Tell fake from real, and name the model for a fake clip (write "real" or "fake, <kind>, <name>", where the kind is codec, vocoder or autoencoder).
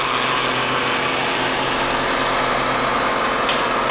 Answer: real